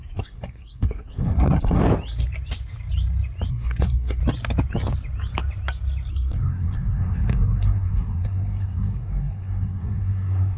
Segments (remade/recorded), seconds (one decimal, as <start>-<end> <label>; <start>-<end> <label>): 0.0-1.8 remade; 1.8-3.5 recorded; 3.5-4.2 remade; 4.2-6.1 recorded; 6.1-10.6 remade